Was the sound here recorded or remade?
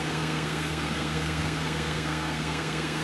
remade